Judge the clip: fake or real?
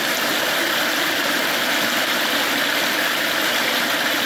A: real